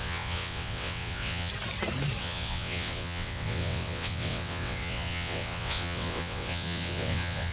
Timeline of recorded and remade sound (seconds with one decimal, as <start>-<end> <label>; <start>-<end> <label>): 0.0-1.5 remade; 1.5-2.2 recorded; 2.2-7.5 remade